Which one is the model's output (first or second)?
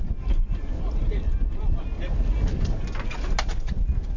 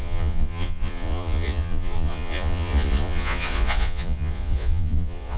second